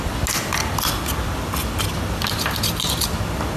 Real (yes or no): yes